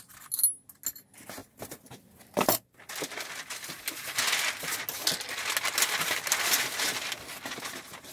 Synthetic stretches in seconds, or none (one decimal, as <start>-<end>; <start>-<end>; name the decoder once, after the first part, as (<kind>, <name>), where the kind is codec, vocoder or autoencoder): 1.4-2.0 (vocoder, BigVGAN v2)